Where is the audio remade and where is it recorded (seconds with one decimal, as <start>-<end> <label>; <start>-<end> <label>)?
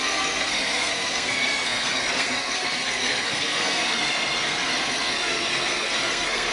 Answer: 0.0-6.5 remade